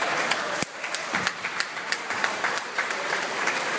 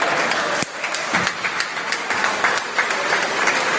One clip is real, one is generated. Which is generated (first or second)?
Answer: first